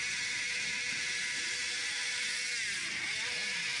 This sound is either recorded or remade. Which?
recorded